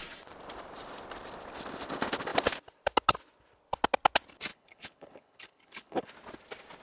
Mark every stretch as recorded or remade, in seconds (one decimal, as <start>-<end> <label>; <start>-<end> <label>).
0.0-4.5 recorded; 4.5-6.1 remade; 6.1-6.8 recorded